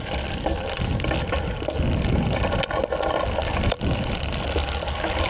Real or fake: real